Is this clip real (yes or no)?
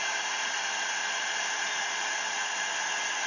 yes